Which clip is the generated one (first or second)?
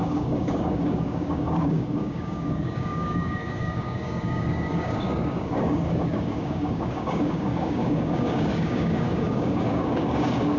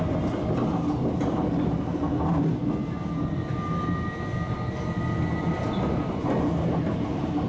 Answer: first